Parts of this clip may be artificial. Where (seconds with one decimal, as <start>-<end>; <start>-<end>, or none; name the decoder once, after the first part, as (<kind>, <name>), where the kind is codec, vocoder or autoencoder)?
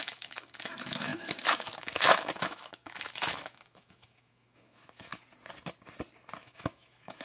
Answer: 0.0-5.1 (autoencoder, DAC-VAE); 6.4-7.2